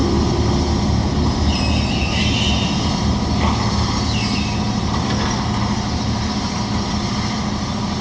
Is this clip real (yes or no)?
yes